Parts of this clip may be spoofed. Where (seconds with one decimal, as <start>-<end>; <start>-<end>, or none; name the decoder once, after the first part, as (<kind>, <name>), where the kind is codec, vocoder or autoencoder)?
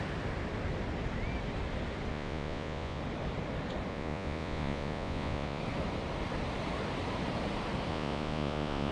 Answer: 2.1-3.0 (vocoder, Vocos); 3.9-5.6; 7.9-8.9